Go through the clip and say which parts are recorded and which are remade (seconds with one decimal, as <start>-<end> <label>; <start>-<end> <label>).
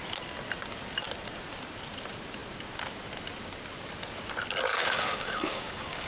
0.0-4.7 recorded; 4.7-6.1 remade